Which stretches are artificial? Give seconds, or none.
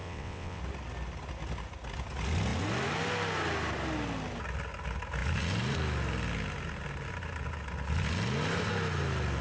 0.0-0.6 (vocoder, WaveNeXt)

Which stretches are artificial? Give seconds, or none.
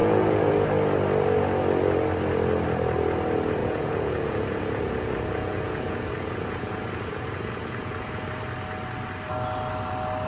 0.0-0.5 (vocoder, Vocos); 3.6-8.3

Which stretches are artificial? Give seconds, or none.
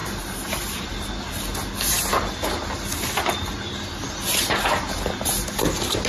0.0-1.1 (vocoder, BigVGAN v2)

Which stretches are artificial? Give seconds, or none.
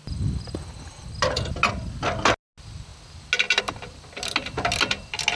none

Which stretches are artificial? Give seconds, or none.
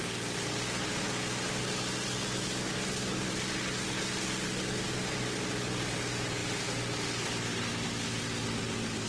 none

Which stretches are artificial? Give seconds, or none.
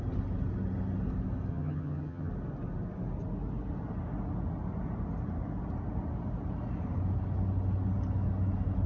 1.5-2.3 (vocoder, HiFi-GAN)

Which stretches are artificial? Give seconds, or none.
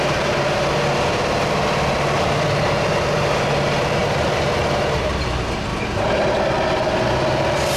4.0-5.1 (vocoder, BigVGAN v2); 5.7-6.3